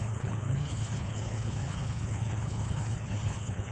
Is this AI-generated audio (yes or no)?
yes